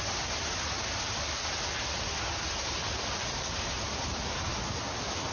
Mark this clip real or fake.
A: real